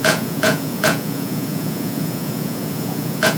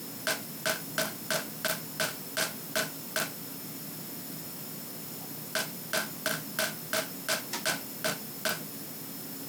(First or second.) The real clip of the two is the second